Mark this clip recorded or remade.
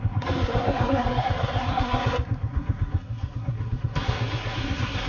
remade